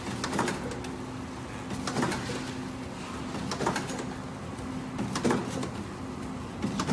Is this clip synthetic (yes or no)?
no